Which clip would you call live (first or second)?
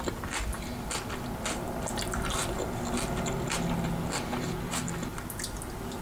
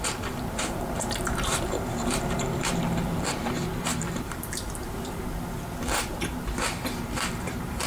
first